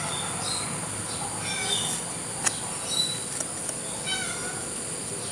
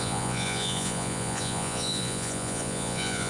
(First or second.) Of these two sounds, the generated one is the second